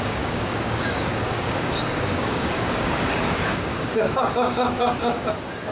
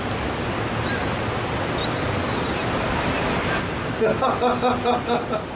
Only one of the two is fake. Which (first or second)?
first